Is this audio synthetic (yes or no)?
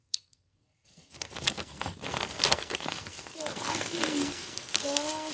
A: yes